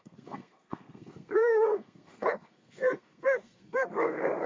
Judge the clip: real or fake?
fake